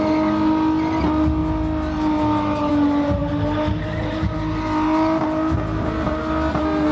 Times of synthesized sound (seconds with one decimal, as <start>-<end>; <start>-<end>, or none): none